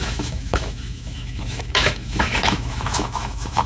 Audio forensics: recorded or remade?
remade